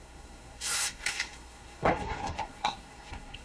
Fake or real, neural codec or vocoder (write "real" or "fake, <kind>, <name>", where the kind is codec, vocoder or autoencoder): fake, codec, SNAC